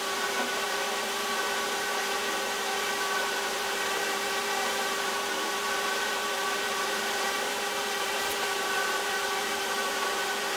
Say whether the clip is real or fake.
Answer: fake